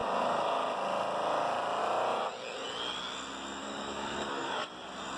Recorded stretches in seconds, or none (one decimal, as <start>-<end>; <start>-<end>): 0.0-3.6; 4.7-5.2